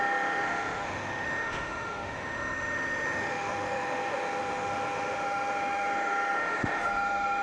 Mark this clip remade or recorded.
remade